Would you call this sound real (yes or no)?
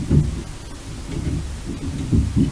yes